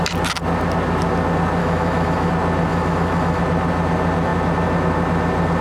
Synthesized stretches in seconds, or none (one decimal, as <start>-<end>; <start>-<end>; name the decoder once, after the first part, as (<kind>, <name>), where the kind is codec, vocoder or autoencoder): 1.6-2.3 (autoencoder, DAC-VAE); 2.7-3.4